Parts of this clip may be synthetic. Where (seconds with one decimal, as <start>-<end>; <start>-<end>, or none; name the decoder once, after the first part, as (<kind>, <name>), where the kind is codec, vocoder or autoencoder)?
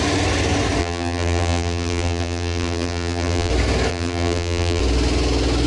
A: 0.8-3.5 (vocoder, BigVGAN v2); 3.9-4.8